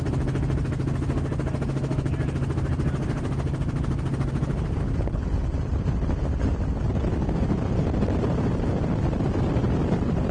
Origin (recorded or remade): recorded